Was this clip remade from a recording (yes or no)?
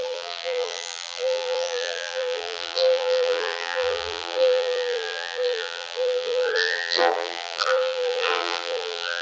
yes